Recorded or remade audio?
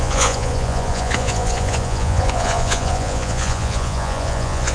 remade